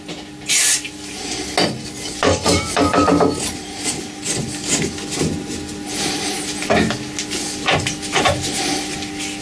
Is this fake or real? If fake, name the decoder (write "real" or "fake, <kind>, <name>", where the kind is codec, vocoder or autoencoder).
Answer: real